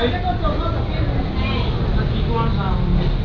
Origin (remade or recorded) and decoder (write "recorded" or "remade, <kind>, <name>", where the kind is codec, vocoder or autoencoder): recorded